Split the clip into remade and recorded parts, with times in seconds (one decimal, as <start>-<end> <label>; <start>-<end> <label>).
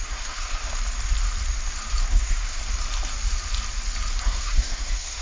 0.0-0.7 remade; 0.7-2.0 recorded; 2.0-2.6 remade; 2.6-4.2 recorded; 4.2-5.2 remade